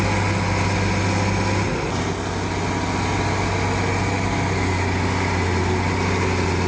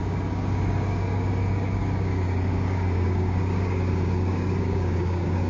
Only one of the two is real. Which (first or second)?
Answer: first